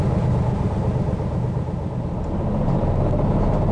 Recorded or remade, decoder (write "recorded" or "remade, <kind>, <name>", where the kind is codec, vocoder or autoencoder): recorded